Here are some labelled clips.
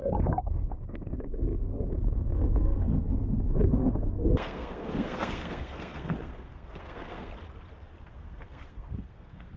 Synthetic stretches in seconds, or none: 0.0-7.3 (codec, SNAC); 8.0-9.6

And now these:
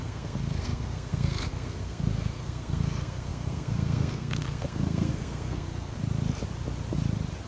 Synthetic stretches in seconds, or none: 0.0-6.0 (codec, SNAC)

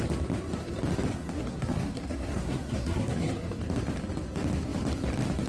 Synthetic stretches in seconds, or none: 1.1-3.6 (codec, SNAC)

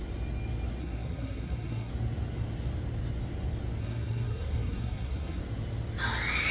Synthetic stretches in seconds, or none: 0.8-1.9 (codec, SNAC); 3.8-5.4

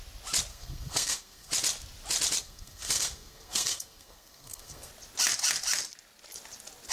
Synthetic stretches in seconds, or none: 0.5-1.5 (codec, SNAC); 2.4-4.9